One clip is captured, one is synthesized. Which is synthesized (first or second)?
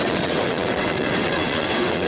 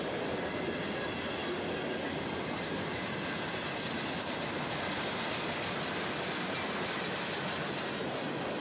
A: first